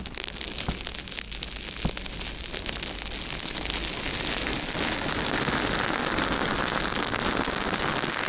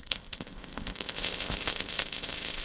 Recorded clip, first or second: first